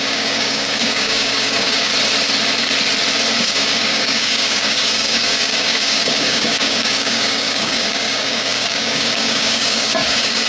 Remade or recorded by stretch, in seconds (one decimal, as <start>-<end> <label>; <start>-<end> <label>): 0.0-1.9 remade; 1.9-3.4 recorded; 3.4-10.5 remade